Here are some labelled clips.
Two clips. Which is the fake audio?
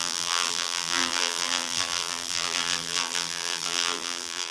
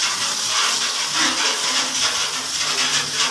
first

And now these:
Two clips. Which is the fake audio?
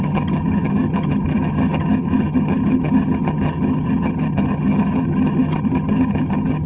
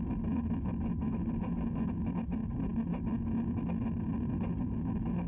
first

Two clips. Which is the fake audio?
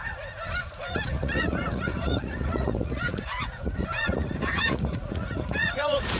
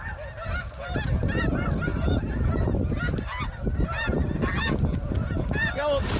first